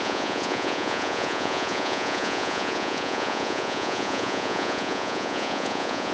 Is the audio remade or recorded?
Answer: remade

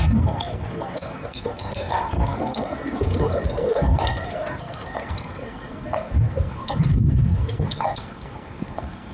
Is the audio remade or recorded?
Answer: remade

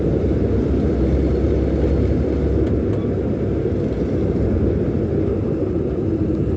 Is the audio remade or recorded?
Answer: recorded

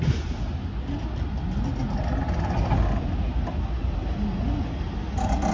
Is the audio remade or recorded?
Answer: recorded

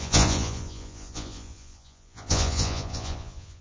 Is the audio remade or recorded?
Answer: remade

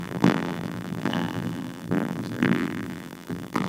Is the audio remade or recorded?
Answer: remade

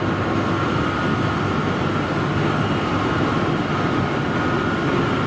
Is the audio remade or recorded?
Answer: recorded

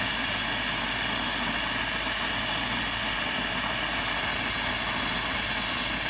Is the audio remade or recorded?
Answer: recorded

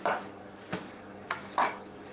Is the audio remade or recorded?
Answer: remade